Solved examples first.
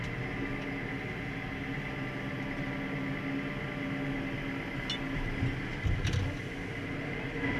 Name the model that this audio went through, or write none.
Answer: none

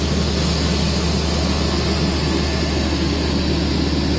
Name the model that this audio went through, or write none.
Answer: none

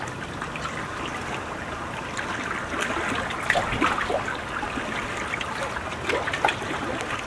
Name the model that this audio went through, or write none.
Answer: none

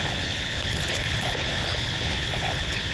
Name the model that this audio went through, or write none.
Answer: codec, HILCodec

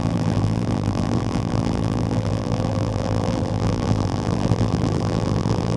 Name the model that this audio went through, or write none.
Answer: vocoder, BigVGAN v2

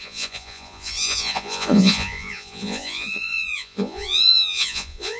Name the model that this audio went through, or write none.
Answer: vocoder, Vocos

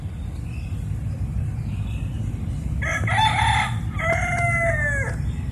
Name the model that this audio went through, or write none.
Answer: none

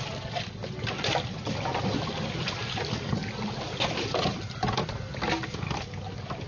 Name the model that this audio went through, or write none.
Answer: none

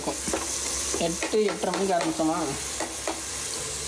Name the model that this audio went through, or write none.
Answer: none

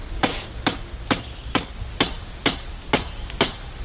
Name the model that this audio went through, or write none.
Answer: none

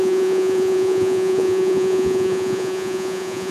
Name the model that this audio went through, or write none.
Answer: vocoder, Vocos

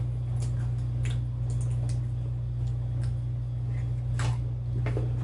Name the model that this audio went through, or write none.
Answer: none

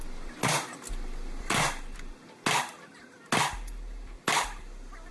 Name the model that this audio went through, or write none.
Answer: none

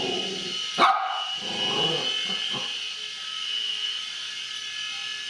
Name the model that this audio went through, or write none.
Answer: none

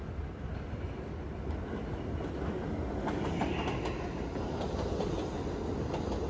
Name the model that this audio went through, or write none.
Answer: none